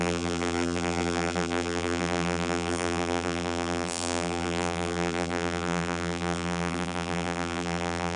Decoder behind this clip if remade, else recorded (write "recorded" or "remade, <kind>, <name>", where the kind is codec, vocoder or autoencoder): remade, vocoder, BigVGAN v2